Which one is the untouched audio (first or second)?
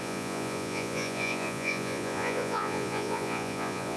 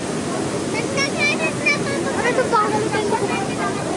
second